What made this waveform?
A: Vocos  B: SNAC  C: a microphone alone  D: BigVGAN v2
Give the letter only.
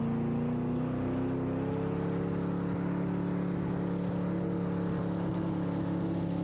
C